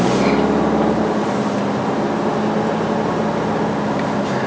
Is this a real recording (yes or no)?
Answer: yes